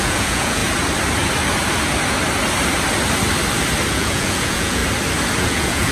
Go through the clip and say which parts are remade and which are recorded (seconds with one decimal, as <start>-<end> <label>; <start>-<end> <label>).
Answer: 0.0-0.6 remade; 0.6-3.9 recorded; 3.9-4.8 remade; 4.8-5.4 recorded; 5.4-5.9 remade